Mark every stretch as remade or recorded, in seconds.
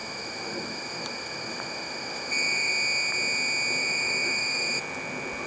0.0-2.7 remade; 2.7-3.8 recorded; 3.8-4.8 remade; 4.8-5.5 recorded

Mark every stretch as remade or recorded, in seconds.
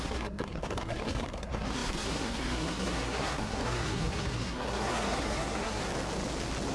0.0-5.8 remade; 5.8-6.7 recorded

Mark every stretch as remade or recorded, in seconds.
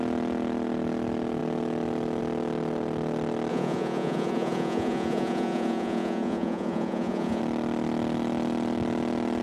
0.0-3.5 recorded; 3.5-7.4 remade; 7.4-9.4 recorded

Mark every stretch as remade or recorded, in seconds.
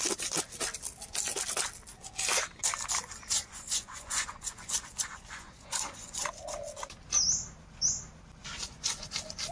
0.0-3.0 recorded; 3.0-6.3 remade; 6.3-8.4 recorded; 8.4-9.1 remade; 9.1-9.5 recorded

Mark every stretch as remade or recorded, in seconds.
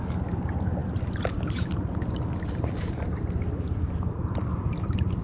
0.0-4.2 recorded; 4.2-5.2 remade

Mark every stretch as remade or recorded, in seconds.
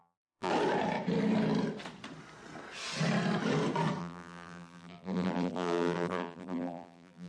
0.0-0.5 remade; 0.5-4.0 recorded; 4.0-7.3 remade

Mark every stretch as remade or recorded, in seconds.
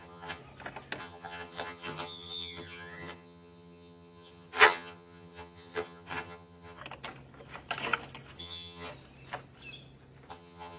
0.0-0.4 remade; 0.4-1.0 recorded; 1.0-6.8 remade; 6.8-8.4 recorded; 8.4-8.9 remade; 8.9-10.3 recorded; 10.3-10.8 remade